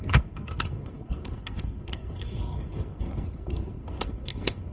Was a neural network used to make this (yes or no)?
yes